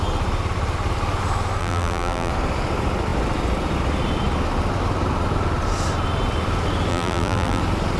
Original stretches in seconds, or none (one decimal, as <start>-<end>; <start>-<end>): 0.0-1.6; 2.3-6.9; 7.6-8.0